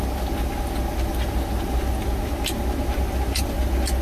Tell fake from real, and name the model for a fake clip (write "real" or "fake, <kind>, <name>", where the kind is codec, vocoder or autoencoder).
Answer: real